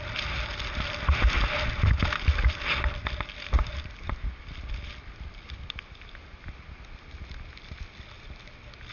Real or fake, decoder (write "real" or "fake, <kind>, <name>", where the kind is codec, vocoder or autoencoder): real